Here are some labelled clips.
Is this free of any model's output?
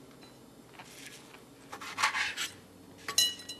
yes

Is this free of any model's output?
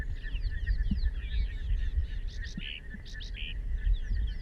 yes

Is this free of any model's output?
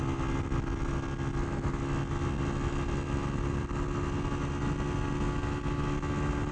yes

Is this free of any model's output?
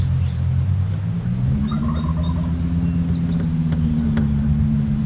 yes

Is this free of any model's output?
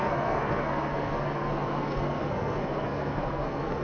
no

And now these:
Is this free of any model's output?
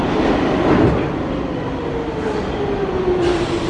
yes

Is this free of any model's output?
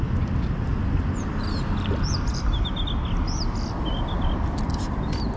yes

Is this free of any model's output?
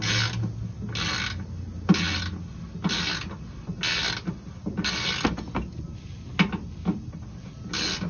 yes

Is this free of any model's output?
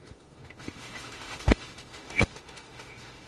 no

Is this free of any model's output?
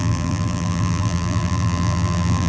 no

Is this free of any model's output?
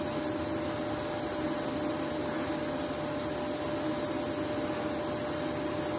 yes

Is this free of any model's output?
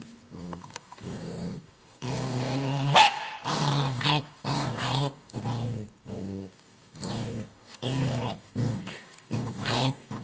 no